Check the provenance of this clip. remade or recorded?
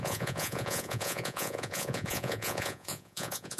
remade